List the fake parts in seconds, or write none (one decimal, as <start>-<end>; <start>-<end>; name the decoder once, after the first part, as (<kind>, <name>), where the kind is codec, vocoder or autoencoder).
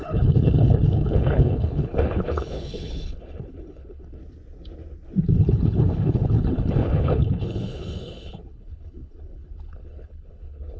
0.0-4.2 (codec, HILCodec); 5.2-10.8